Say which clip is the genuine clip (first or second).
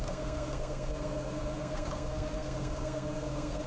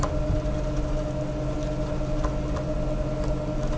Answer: second